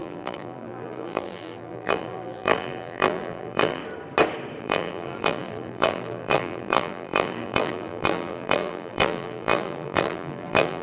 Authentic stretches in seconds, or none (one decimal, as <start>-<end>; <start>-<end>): 3.8-4.6